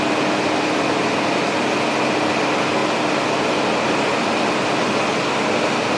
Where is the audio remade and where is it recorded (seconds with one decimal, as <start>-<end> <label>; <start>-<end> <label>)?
0.0-6.0 recorded